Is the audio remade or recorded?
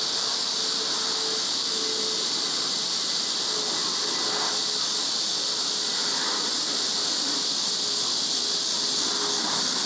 recorded